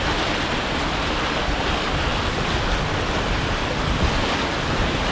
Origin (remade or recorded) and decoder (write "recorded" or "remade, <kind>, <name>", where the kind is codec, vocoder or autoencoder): recorded